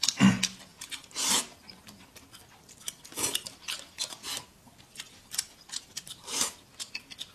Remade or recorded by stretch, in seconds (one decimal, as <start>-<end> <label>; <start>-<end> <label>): 0.0-4.5 recorded; 4.5-6.7 remade; 6.7-7.3 recorded